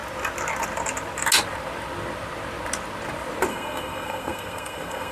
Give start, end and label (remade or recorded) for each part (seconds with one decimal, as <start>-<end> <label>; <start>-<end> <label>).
0.0-3.5 recorded; 3.5-5.1 remade